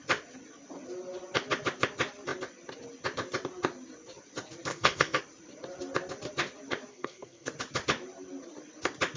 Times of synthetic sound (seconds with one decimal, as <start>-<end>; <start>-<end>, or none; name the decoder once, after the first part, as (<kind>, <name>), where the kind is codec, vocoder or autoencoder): 4.7-5.2 (codec, SNAC); 6.9-7.5